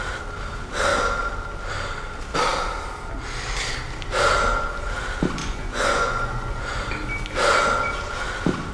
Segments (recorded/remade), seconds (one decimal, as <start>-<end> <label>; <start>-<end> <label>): 0.0-5.4 recorded; 5.4-6.8 remade; 6.8-8.7 recorded